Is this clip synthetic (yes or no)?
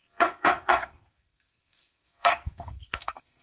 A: yes